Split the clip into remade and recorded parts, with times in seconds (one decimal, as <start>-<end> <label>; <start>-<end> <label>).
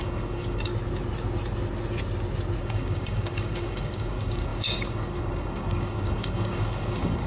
0.0-0.7 remade; 0.7-2.6 recorded; 2.6-7.3 remade